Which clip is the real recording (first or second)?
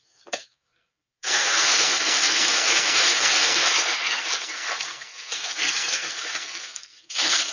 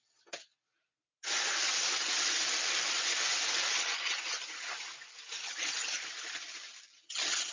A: second